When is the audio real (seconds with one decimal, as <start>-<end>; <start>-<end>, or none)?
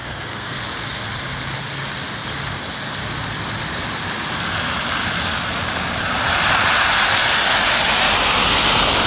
0.6-9.1